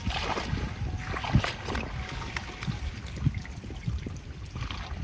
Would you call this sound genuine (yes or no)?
yes